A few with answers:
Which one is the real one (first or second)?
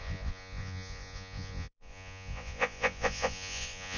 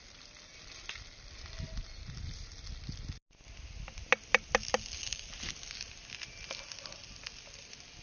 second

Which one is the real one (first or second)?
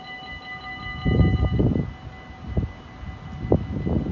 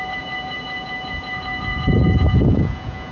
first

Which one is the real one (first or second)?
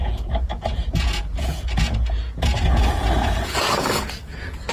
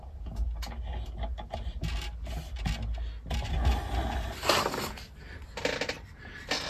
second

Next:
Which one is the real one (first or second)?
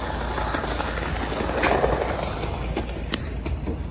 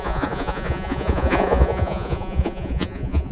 first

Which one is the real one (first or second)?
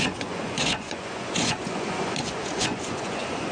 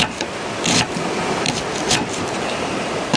second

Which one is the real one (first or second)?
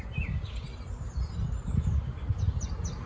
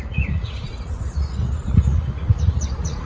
first